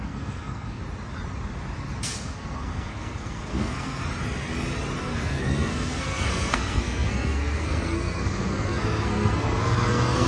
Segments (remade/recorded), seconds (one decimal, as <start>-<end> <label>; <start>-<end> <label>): 0.0-0.8 remade; 0.8-2.0 recorded; 2.0-4.0 remade; 4.0-5.0 recorded; 5.0-10.3 remade